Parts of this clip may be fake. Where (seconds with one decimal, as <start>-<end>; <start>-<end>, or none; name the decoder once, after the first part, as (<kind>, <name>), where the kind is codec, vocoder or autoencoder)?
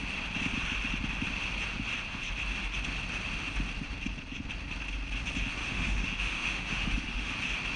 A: 5.6-7.3 (autoencoder, DAC-VAE)